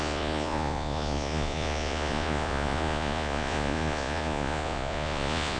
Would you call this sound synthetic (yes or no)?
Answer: yes